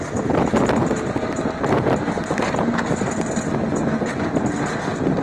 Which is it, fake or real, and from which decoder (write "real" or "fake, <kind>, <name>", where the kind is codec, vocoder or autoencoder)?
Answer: real